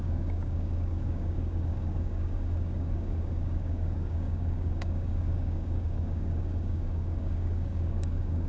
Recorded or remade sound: remade